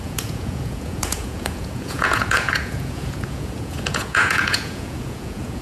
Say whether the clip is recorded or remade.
remade